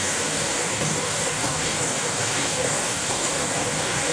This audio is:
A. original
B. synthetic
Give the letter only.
B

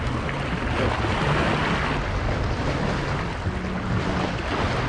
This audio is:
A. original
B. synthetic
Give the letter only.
A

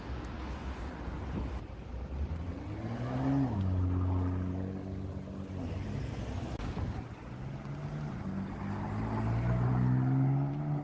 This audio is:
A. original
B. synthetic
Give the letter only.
A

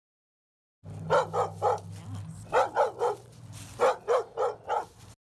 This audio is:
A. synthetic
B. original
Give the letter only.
B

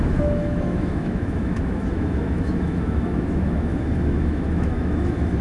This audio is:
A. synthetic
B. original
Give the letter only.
A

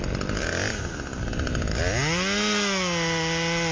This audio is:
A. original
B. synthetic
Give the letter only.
A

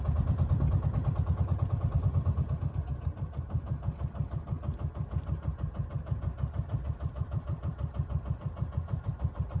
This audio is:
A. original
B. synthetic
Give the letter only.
A